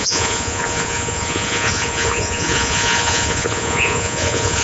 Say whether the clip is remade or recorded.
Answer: remade